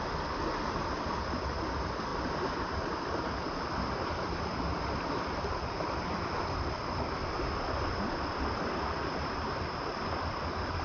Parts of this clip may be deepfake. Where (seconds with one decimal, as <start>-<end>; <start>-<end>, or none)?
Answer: none